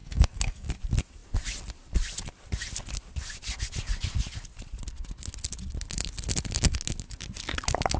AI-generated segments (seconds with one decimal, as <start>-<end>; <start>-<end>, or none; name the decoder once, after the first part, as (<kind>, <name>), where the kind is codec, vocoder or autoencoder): 0.0-0.7 (codec, SNAC)